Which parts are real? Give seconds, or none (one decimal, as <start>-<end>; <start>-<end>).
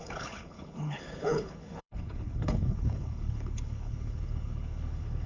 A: none